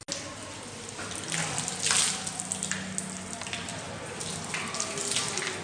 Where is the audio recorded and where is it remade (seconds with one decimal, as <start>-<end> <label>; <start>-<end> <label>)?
0.0-5.6 recorded